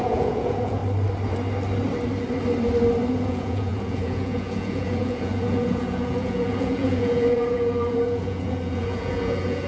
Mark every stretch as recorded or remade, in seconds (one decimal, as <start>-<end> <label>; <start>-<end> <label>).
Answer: 0.0-0.8 remade; 0.8-3.1 recorded; 3.1-9.7 remade